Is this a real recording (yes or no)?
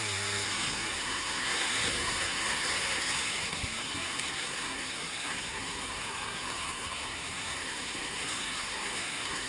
no